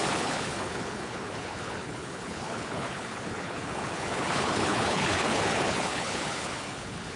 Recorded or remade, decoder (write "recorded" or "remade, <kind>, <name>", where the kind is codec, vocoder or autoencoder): remade, codec, HILCodec